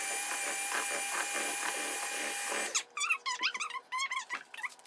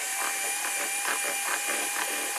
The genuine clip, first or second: first